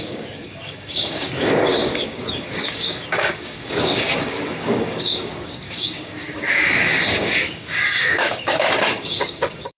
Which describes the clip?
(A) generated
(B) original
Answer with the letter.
A